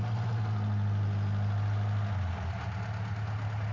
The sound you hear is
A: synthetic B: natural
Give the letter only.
B